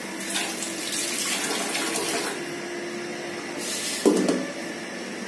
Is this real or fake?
real